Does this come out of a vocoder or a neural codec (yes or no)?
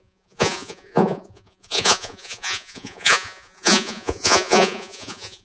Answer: yes